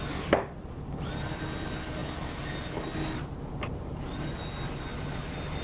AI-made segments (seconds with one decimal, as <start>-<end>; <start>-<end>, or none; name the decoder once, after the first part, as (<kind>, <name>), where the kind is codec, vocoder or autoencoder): none